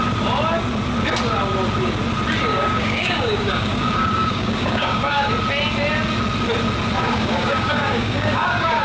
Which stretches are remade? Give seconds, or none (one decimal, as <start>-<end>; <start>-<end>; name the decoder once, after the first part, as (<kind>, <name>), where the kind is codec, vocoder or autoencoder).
2.5-5.3 (codec, DAC); 7.0-8.8